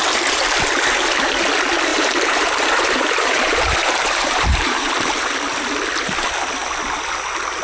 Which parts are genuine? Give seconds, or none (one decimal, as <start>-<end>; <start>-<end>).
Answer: 0.0-1.9; 4.9-7.6